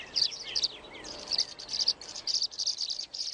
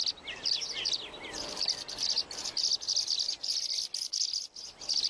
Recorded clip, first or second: second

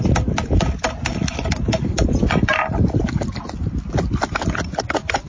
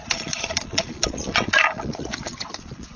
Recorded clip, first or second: first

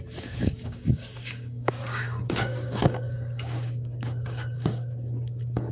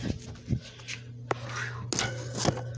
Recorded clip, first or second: second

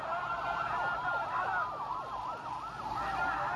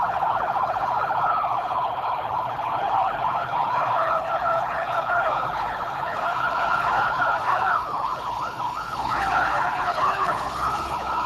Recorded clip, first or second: first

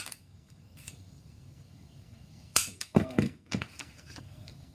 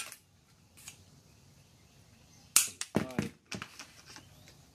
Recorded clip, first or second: second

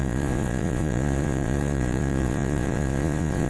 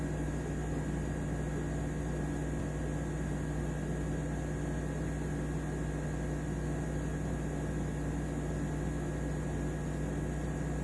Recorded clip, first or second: second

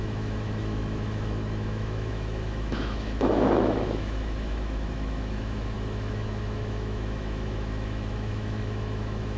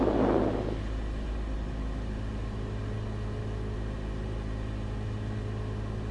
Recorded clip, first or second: second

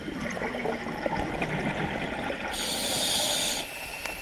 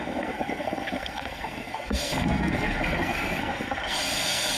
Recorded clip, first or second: first